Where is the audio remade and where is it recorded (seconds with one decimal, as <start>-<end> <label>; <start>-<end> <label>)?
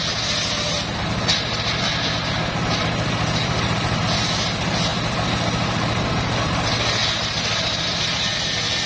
0.0-8.9 recorded